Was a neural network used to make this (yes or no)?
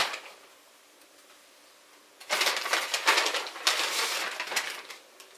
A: no